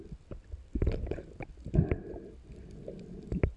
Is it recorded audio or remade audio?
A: recorded